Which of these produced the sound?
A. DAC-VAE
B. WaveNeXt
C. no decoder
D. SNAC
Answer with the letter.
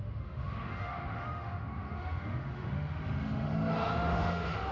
A